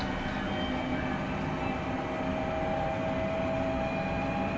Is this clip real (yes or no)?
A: yes